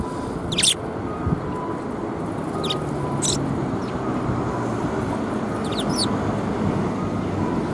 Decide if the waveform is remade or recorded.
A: recorded